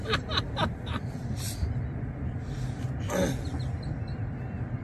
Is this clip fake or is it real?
real